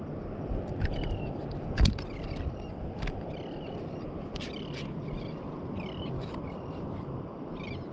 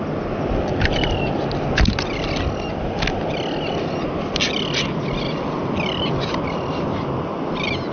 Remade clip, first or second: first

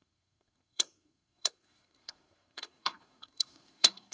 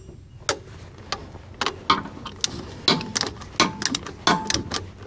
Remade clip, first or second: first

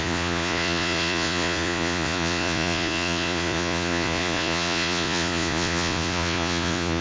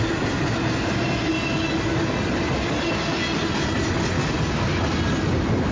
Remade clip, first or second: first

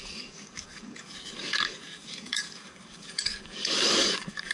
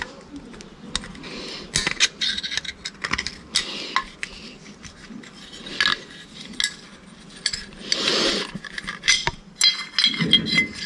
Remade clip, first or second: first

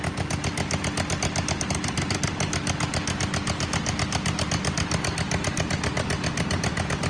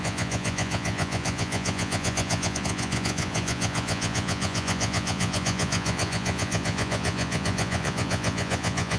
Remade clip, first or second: second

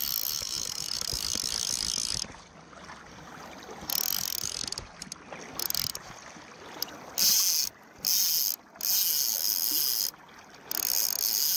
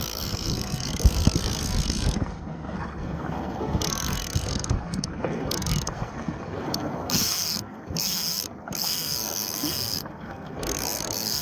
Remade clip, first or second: second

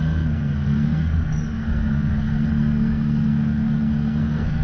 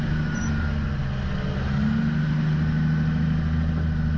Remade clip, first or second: first